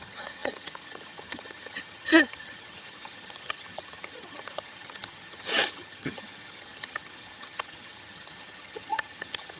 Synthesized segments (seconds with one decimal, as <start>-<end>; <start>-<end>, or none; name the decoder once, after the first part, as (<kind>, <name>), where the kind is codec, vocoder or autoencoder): 0.0-9.6 (vocoder, HiFi-GAN)